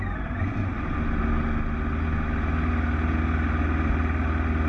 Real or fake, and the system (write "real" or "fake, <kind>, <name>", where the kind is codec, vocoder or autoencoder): real